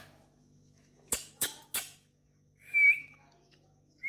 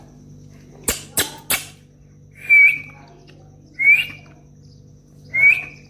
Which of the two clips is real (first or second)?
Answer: second